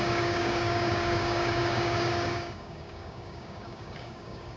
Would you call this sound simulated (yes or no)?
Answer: yes